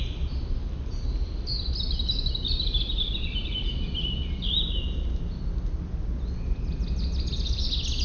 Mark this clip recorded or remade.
recorded